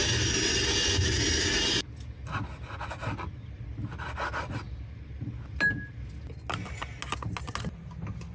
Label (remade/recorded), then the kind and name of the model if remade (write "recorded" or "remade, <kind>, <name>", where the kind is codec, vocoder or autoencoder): recorded